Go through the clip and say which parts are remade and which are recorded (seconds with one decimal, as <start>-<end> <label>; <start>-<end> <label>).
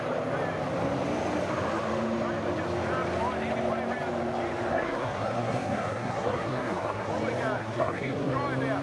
0.0-4.7 recorded; 4.7-7.1 remade; 7.1-7.6 recorded; 7.6-8.3 remade; 8.3-8.8 recorded